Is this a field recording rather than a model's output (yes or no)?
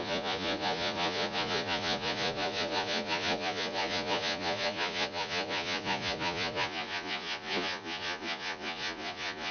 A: no